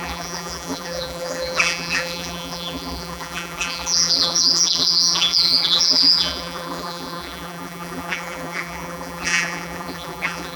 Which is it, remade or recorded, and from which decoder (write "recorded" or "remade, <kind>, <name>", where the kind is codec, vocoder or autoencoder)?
remade, vocoder, BigVGAN v2